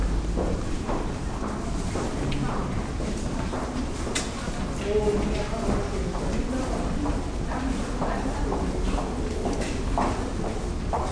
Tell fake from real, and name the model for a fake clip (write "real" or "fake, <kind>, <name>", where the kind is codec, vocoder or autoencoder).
real